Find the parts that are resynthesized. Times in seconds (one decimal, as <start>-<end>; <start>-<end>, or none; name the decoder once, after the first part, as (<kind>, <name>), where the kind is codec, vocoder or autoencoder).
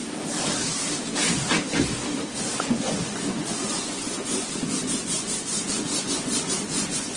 2.6-7.2 (vocoder, Vocos)